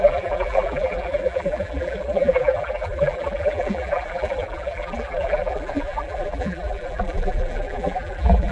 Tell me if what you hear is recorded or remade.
remade